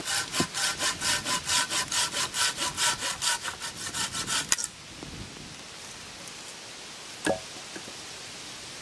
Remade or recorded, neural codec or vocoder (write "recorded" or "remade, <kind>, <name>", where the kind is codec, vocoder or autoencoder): recorded